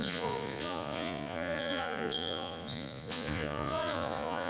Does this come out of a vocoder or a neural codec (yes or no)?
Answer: yes